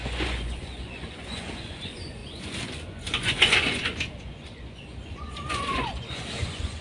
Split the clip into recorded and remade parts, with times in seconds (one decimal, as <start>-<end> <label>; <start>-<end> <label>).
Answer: 0.0-6.8 remade